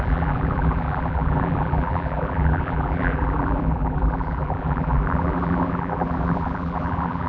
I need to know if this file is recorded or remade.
remade